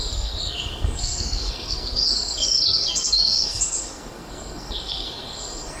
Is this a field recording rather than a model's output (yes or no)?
no